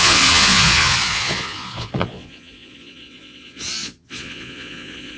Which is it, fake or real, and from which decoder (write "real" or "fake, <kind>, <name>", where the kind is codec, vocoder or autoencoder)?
fake, vocoder, Vocos